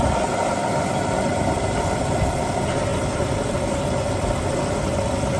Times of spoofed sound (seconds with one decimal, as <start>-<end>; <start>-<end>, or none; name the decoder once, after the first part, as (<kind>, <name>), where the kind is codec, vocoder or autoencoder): none